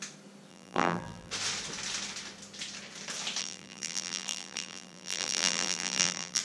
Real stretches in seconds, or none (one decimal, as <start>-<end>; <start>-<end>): 0.0-0.5; 1.3-3.4